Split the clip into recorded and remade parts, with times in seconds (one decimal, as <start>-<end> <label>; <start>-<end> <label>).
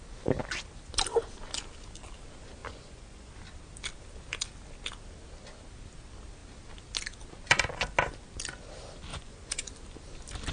0.0-2.6 recorded; 2.6-3.3 remade; 3.3-9.1 recorded; 9.1-9.7 remade; 9.7-10.5 recorded